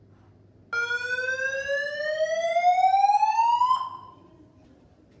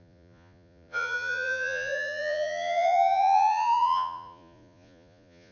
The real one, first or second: first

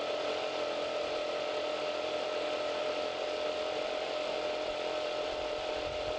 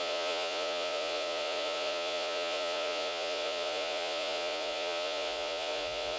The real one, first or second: first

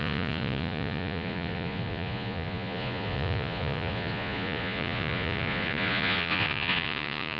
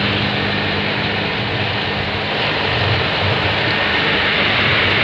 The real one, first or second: second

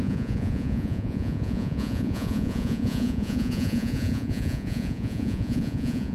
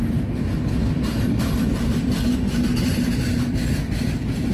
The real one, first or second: second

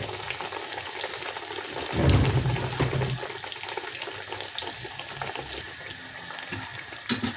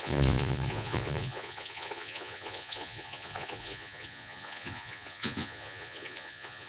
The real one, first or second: first